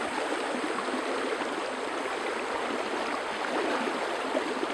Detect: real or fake real